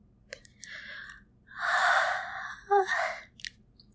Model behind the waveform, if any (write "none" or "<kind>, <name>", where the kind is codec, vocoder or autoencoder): vocoder, BigVGAN v2